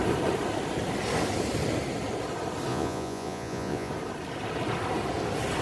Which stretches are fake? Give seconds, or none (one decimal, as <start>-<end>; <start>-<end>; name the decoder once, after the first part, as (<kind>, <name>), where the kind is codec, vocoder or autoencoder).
2.7-3.9 (vocoder, Vocos)